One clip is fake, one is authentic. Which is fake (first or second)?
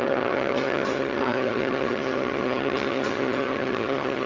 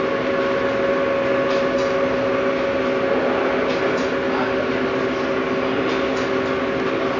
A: first